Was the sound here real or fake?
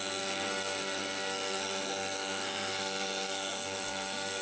fake